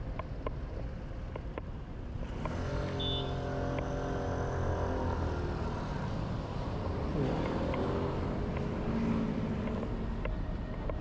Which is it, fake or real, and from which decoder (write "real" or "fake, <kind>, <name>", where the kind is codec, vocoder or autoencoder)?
real